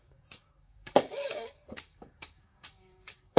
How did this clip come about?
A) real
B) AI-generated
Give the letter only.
B